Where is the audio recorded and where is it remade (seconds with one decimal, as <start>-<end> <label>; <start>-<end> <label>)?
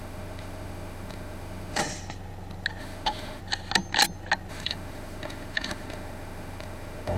0.0-1.8 remade; 1.8-2.8 recorded; 2.8-3.4 remade; 3.4-4.5 recorded; 4.5-7.2 remade